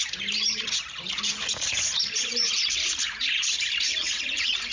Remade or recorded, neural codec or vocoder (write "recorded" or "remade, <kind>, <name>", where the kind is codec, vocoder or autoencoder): remade, vocoder, BigVGAN v2